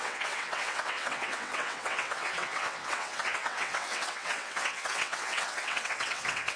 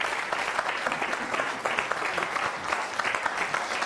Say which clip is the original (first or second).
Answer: second